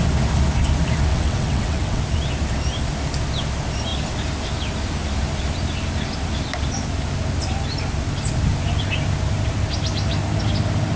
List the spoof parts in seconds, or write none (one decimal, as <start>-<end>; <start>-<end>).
1.1-2.0

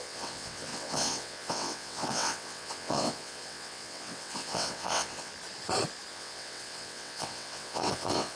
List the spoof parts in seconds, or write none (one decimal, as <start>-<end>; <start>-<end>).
0.0-5.3; 6.1-8.4

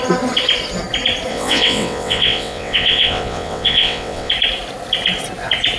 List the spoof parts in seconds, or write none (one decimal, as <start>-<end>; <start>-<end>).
1.3-4.3

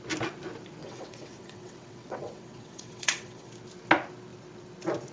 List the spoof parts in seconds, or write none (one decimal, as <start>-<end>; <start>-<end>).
0.8-3.5

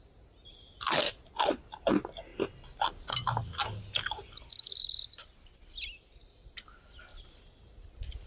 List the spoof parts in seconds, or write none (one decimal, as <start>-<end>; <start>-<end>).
none

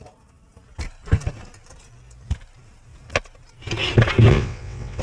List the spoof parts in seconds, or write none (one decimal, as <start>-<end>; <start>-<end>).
4.3-5.0

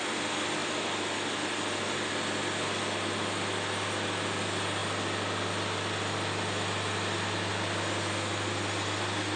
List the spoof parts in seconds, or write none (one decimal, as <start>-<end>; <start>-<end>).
none

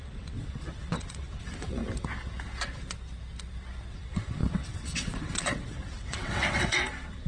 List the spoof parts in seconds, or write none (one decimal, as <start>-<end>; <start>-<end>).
0.0-1.8; 3.9-7.3